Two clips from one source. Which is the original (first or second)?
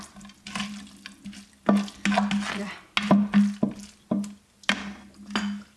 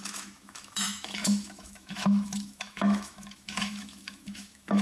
first